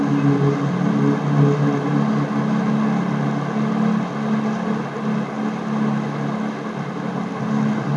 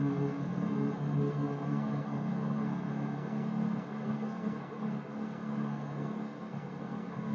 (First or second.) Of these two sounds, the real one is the first